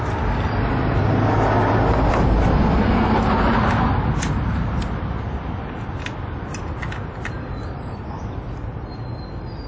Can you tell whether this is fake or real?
real